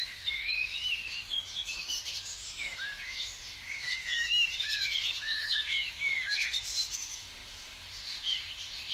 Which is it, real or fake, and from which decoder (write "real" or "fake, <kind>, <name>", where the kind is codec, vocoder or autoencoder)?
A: fake, autoencoder, DAC-VAE